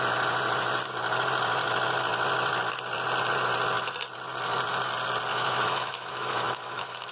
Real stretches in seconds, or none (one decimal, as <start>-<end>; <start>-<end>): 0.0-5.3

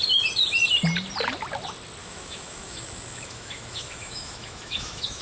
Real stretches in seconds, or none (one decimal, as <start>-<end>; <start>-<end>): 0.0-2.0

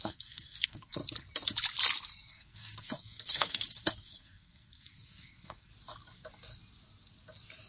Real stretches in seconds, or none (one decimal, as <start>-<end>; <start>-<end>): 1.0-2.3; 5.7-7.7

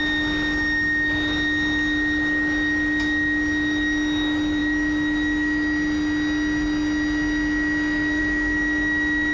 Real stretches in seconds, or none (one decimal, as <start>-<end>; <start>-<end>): 0.0-9.3

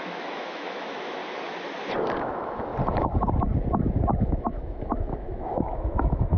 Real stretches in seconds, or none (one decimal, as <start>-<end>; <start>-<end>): 1.2-2.2; 2.7-4.2